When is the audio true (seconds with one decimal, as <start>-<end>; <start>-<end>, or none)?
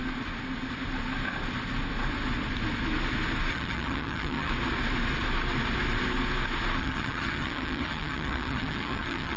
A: 0.0-3.5; 4.5-6.8